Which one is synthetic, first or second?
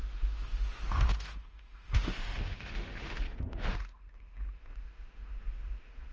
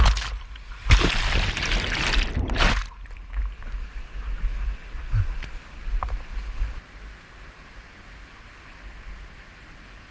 first